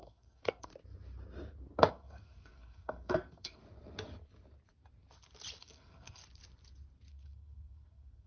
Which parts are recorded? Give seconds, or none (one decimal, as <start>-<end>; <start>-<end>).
0.7-1.9; 3.6-5.6; 6.2-7.1